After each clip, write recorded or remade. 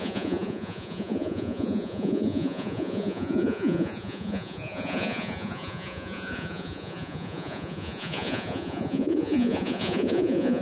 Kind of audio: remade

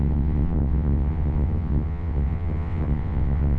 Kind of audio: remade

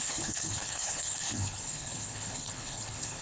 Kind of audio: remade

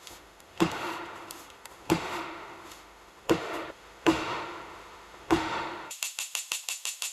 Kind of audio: remade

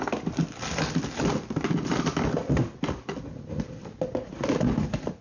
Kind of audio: recorded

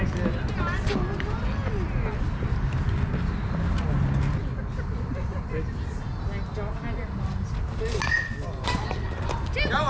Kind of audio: recorded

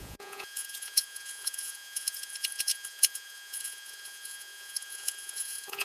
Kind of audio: remade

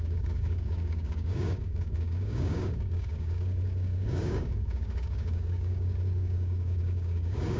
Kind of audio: remade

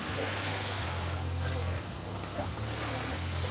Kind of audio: remade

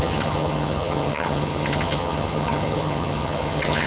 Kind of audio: remade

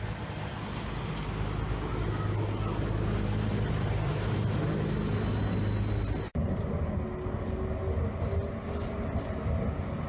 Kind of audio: recorded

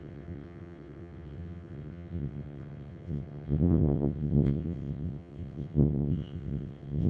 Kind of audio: remade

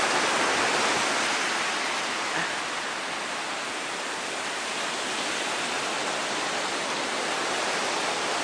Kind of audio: recorded